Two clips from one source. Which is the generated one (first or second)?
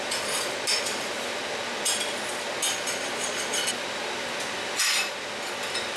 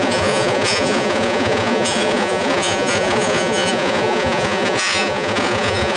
second